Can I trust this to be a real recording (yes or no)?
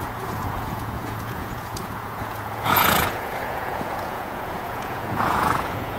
no